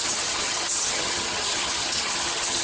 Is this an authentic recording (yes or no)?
no